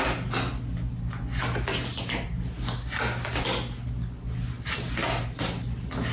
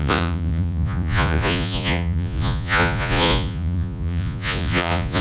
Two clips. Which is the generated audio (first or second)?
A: second